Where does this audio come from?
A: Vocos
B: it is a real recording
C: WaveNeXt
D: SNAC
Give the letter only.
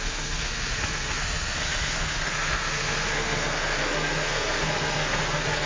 D